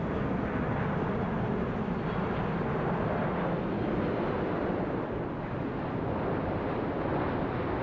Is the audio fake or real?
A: real